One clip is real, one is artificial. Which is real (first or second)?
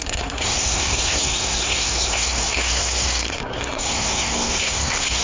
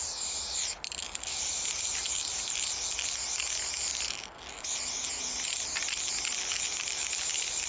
second